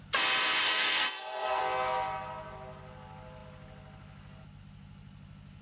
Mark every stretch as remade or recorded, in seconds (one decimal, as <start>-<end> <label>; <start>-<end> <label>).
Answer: 0.0-0.6 recorded; 0.6-1.6 remade; 1.6-5.6 recorded

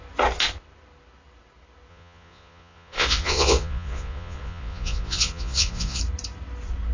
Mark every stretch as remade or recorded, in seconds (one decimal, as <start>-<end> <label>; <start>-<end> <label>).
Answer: 0.0-1.9 recorded; 1.9-6.0 remade; 6.0-6.9 recorded

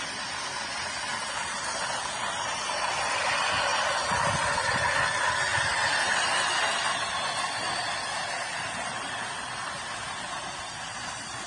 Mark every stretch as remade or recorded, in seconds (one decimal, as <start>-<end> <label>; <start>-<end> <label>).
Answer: 0.0-11.5 recorded

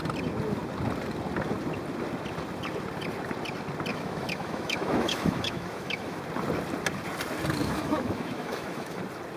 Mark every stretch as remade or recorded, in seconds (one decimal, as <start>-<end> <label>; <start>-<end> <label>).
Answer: 0.0-3.9 recorded; 3.9-6.2 remade; 6.2-7.6 recorded; 7.6-9.0 remade; 9.0-9.4 recorded

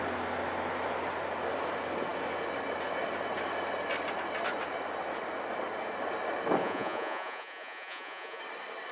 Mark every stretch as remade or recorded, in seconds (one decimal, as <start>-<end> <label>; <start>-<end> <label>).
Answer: 0.0-6.6 recorded; 6.6-8.4 remade; 8.4-8.9 recorded

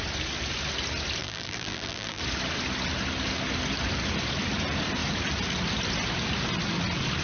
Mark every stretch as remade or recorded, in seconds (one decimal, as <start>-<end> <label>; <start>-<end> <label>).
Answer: 0.0-1.2 recorded; 1.2-2.2 remade; 2.2-7.2 recorded

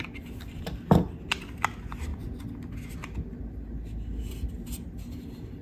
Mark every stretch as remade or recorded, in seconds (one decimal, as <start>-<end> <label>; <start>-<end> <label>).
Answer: 0.0-5.6 recorded

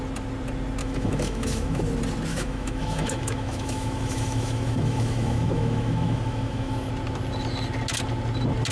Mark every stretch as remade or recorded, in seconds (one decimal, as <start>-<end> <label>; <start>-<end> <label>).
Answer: 0.0-0.8 recorded; 0.8-1.8 remade; 1.8-2.3 recorded; 2.3-6.9 remade; 6.9-8.7 recorded